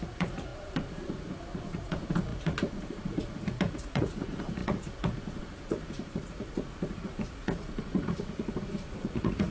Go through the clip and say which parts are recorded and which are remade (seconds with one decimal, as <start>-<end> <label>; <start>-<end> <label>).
0.0-9.5 remade